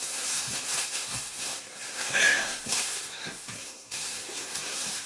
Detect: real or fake fake